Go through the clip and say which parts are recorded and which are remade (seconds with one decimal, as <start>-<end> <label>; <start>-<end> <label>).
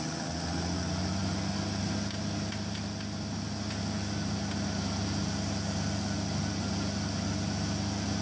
0.0-8.2 recorded